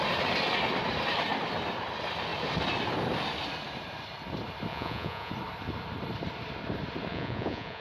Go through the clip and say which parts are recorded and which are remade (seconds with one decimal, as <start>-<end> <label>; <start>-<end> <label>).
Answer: 0.0-4.7 recorded; 4.7-5.3 remade; 5.3-7.1 recorded; 7.1-7.8 remade

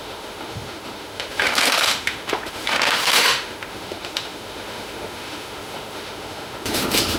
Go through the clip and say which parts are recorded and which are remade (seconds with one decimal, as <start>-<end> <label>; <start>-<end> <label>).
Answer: 0.0-7.2 remade

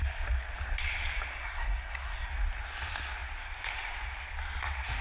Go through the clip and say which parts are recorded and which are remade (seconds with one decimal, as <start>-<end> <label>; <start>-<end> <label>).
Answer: 0.0-1.3 recorded; 1.3-2.3 remade; 2.3-5.0 recorded

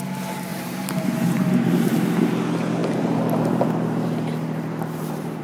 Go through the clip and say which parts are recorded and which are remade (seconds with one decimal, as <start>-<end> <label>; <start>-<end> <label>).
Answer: 0.0-0.5 recorded; 0.5-1.7 remade; 1.7-2.8 recorded; 2.8-5.4 remade

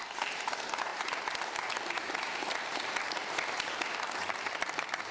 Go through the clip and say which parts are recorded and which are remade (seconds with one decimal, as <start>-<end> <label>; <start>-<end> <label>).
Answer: 0.0-0.9 remade; 0.9-2.0 recorded; 2.0-3.2 remade; 3.2-4.2 recorded; 4.2-5.1 remade

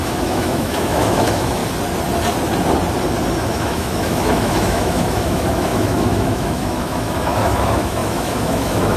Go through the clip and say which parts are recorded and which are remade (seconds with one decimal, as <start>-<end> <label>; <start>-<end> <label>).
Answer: 0.0-1.6 remade; 1.6-3.5 recorded; 3.5-9.0 remade

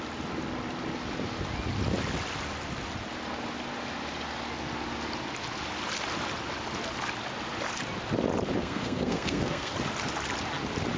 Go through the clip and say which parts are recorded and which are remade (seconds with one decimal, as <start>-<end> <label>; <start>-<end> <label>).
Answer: 0.0-8.6 recorded; 8.6-9.7 remade; 9.7-11.0 recorded

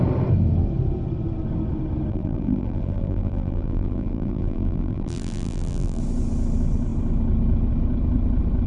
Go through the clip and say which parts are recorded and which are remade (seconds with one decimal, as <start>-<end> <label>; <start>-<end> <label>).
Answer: 0.0-2.1 recorded; 2.1-6.0 remade; 6.0-8.7 recorded